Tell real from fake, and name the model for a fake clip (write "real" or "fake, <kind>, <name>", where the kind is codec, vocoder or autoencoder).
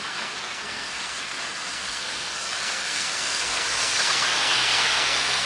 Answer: fake, codec, SNAC